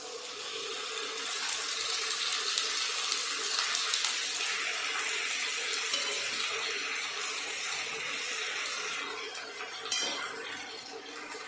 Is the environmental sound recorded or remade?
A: recorded